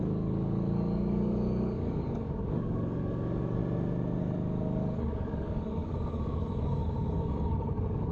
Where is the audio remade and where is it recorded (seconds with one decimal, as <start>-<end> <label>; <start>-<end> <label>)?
0.0-3.6 remade; 3.6-4.2 recorded; 4.2-8.1 remade